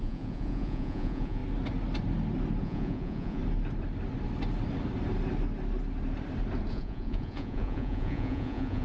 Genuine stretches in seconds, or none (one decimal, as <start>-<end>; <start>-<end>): 1.4-2.6; 3.4-6.7

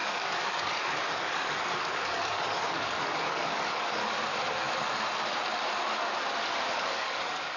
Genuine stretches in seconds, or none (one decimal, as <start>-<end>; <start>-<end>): 4.0-6.7

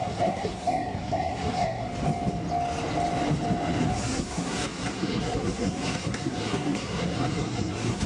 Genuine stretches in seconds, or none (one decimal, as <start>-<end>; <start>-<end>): 1.9-3.8

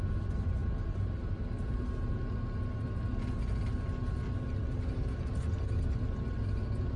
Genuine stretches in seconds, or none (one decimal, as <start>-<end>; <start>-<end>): 0.0-7.0

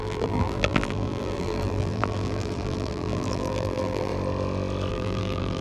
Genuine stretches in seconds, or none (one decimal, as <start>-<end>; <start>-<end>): 4.1-4.9

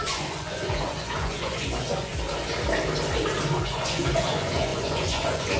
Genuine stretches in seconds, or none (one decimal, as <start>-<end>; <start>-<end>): 2.1-3.6

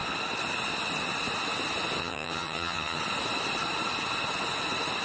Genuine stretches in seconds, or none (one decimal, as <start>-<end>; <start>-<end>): 0.0-2.0; 3.0-5.0

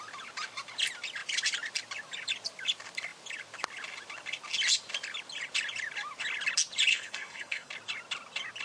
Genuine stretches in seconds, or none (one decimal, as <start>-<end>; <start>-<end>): 0.0-6.9; 7.7-8.6